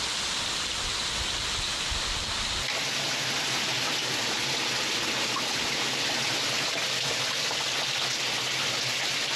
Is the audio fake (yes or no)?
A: no